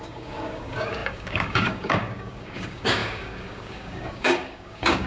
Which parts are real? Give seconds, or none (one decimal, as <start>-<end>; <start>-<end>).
none